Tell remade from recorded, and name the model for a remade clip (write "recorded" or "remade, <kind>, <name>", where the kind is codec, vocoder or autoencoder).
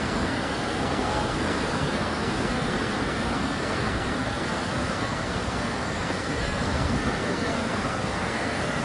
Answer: remade, codec, SNAC